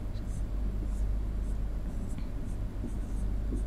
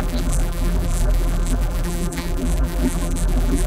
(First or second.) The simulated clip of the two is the second